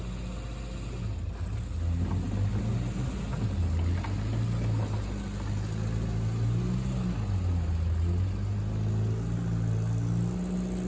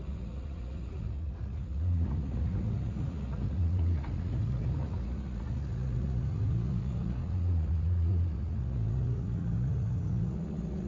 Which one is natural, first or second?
first